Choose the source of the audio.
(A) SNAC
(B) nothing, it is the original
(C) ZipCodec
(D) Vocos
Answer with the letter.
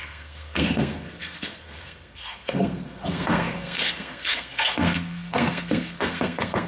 A